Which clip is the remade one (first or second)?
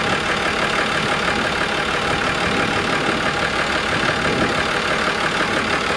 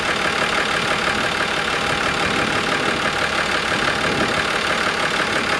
second